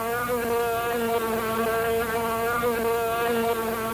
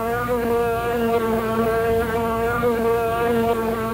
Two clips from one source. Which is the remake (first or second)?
second